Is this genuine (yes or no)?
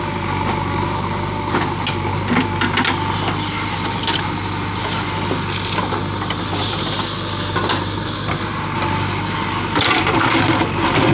yes